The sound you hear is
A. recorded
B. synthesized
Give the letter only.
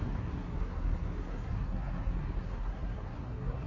B